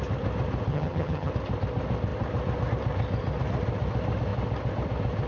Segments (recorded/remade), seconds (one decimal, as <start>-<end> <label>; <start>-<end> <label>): 0.0-0.7 recorded; 0.7-1.3 remade; 1.3-5.3 recorded